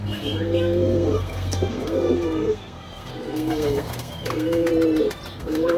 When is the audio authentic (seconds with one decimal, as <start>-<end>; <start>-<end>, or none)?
4.7-5.3